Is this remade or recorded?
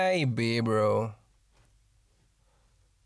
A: recorded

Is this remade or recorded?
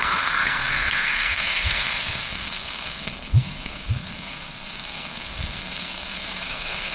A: remade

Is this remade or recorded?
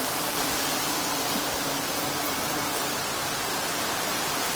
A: remade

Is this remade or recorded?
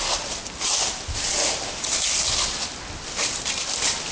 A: recorded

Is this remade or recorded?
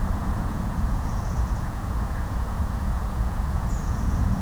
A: remade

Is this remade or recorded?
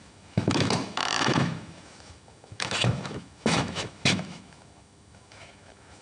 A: remade